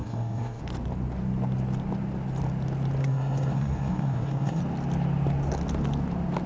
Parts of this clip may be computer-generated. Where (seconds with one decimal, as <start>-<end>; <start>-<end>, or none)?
0.0-0.6; 3.0-4.6